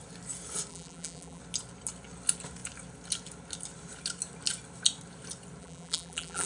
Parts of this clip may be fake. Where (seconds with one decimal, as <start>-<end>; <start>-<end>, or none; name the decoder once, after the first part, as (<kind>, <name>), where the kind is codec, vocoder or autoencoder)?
0.7-1.4 (vocoder, BigVGAN v2); 5.6-6.5